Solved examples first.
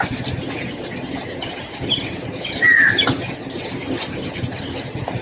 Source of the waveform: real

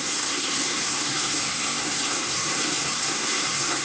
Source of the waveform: fake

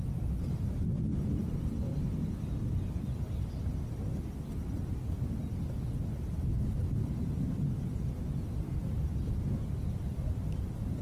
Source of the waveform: real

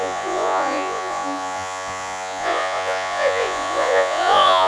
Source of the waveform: fake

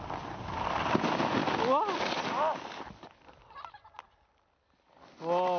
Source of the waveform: real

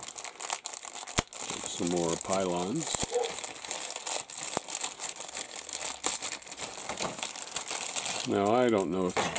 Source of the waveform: real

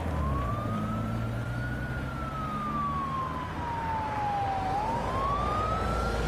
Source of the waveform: real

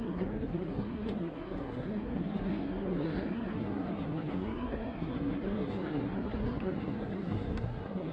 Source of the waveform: fake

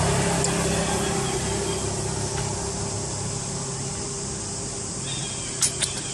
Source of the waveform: real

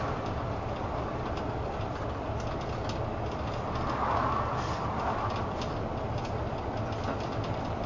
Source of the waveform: real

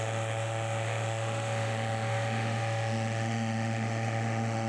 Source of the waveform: fake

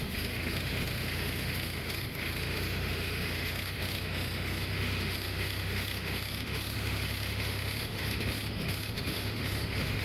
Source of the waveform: fake